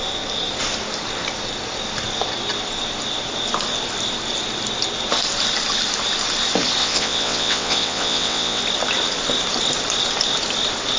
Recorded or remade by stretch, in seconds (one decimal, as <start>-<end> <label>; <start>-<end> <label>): 0.0-6.8 recorded; 6.8-8.6 remade; 8.6-11.0 recorded